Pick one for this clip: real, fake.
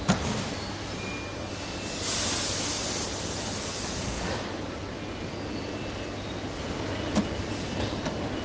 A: real